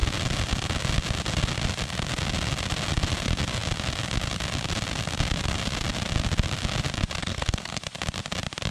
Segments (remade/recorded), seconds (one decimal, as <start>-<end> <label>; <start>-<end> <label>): 0.0-7.2 recorded; 7.2-7.8 remade; 7.8-8.7 recorded